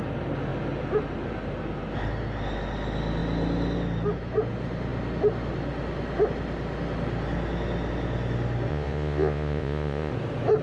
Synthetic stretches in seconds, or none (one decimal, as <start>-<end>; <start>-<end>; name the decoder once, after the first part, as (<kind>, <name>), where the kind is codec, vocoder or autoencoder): 8.7-10.1 (vocoder, Vocos)